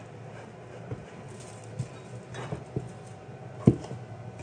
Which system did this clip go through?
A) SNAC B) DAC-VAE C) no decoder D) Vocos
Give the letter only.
C